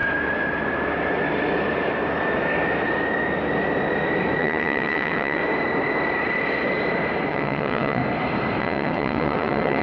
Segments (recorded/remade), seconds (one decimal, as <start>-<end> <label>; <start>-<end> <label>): 0.0-4.4 recorded; 4.4-5.4 remade; 5.4-7.3 recorded; 7.3-8.0 remade; 8.0-8.6 recorded; 8.6-9.8 remade